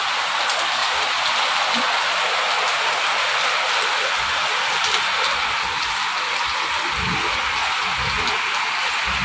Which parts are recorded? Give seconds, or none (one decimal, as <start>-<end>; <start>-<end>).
0.0-9.2